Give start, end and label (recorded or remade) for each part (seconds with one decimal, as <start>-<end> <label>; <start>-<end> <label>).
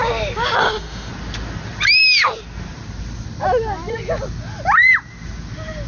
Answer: 0.0-0.6 recorded; 0.6-1.1 remade; 1.1-5.9 recorded